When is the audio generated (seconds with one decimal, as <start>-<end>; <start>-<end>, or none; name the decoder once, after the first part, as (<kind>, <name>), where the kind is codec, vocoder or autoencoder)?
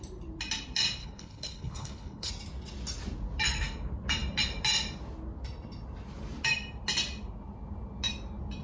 1.0-2.3 (codec, HILCodec)